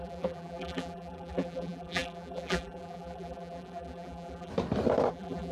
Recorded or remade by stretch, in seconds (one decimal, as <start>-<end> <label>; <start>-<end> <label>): 0.0-4.5 remade; 4.5-5.1 recorded; 5.1-5.5 remade

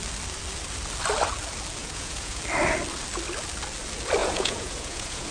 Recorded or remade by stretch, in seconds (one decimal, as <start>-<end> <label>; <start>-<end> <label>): 0.0-1.8 recorded; 1.8-2.4 remade; 2.4-4.2 recorded; 4.2-5.3 remade